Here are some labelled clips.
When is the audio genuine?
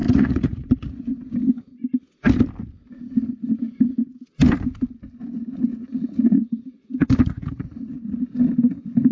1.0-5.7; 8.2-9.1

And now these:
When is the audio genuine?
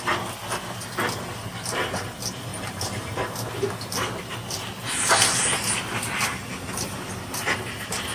0.0-2.5; 3.1-8.1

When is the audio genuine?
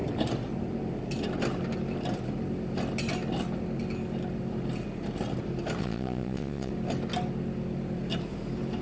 0.0-5.8; 6.7-8.8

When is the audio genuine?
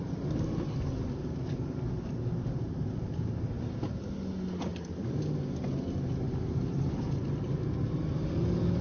0.0-8.8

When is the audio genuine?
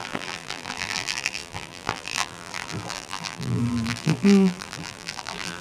none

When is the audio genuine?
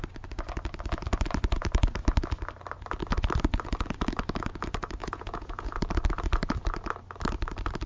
0.0-5.0; 5.7-7.9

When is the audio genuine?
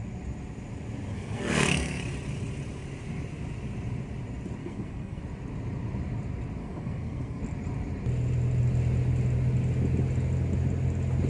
0.0-1.1; 2.0-4.6; 5.2-6.6; 7.4-11.3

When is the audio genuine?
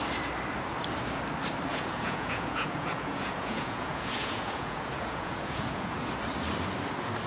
0.0-1.7; 6.1-7.3